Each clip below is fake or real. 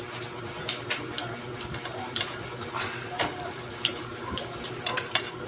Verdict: fake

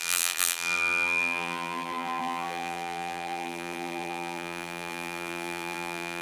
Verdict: fake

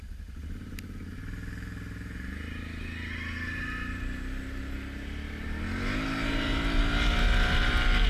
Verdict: real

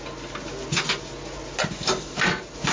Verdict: real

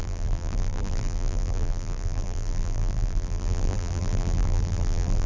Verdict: fake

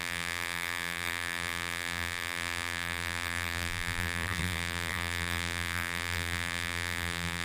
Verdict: fake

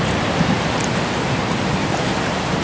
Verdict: fake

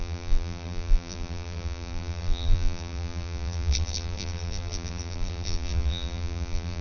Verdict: fake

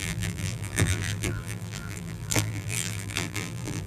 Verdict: fake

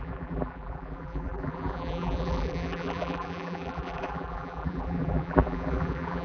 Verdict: fake